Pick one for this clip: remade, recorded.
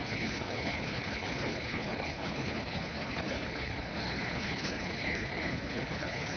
remade